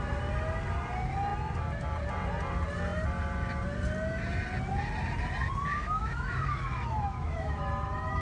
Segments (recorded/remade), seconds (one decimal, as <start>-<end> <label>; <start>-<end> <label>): 0.0-5.7 recorded; 5.7-8.2 remade